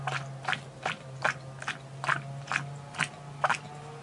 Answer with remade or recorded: recorded